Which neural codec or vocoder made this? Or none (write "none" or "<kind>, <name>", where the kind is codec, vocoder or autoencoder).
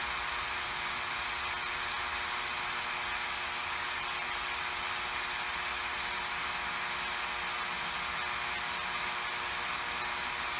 none